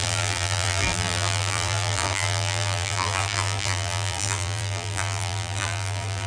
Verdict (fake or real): fake